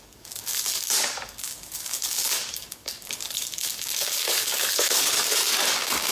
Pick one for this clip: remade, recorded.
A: remade